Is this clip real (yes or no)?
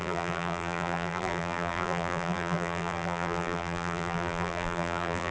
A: no